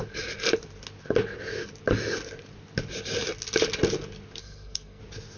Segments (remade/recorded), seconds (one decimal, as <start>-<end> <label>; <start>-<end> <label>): 0.0-4.4 recorded; 4.4-5.0 remade; 5.0-5.4 recorded